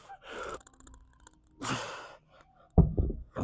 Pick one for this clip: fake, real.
real